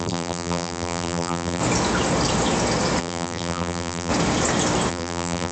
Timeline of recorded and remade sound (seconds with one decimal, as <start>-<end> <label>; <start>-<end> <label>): 0.0-1.6 remade; 1.6-3.0 recorded; 3.0-4.1 remade; 4.1-4.9 recorded; 4.9-5.5 remade